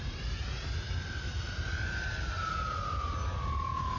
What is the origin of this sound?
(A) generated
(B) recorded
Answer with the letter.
B